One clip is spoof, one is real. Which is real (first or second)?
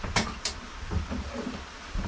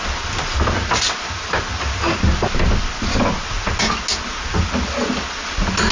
second